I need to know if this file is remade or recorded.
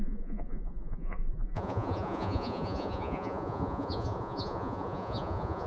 remade